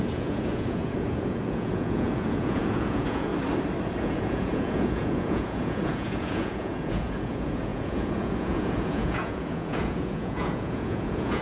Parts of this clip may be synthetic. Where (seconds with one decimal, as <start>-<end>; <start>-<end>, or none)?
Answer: 0.0-3.3; 4.0-11.4